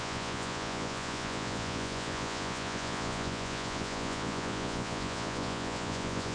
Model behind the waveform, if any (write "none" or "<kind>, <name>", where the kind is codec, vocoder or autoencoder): vocoder, Vocos